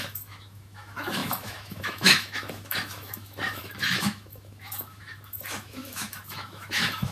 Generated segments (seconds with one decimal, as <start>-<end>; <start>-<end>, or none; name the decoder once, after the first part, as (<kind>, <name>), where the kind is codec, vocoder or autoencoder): 0.0-7.1 (autoencoder, DAC-VAE)